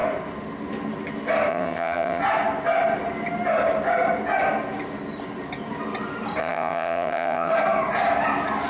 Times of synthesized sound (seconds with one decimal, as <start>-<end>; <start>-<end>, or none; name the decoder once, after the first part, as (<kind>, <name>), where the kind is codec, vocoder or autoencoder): 1.5-2.2 (vocoder, HiFi-GAN); 6.4-7.5